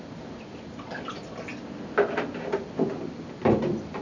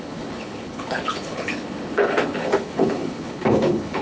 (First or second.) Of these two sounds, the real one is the first